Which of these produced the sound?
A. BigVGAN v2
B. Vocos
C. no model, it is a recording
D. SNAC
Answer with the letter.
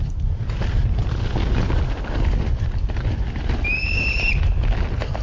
C